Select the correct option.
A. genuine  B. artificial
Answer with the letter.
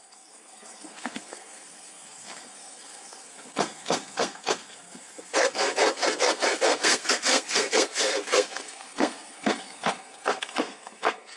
B